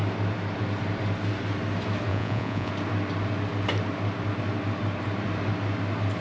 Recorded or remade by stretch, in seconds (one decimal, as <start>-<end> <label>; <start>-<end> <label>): 0.0-2.1 recorded; 2.1-2.7 remade; 2.7-6.2 recorded